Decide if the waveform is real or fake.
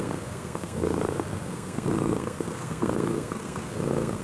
fake